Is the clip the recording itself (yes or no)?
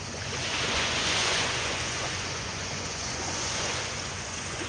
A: no